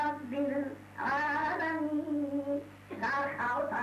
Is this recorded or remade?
recorded